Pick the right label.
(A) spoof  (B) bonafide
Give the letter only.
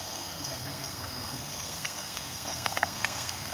A